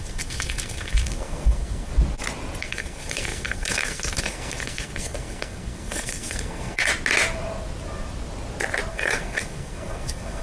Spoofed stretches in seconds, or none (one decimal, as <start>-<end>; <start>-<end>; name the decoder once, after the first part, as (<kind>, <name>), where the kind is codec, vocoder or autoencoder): 0.0-1.9 (codec, SNAC); 2.6-6.9; 8.9-10.4